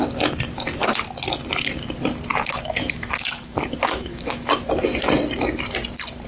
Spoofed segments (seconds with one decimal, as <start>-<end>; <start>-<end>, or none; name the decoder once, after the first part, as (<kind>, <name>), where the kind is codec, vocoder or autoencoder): 2.3-4.7 (autoencoder, DAC-VAE)